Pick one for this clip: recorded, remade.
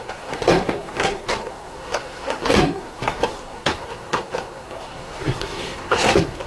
remade